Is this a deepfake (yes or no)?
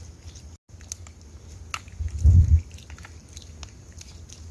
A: no